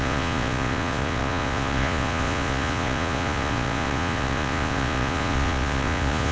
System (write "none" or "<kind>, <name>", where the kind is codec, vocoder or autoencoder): vocoder, Vocos